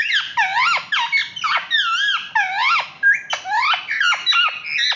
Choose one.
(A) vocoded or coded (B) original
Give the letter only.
B